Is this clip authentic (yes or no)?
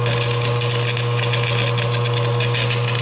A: yes